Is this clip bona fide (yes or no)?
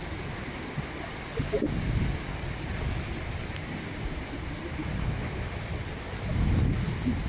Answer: yes